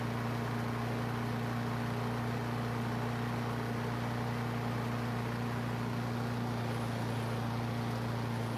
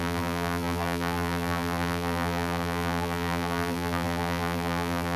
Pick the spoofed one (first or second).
second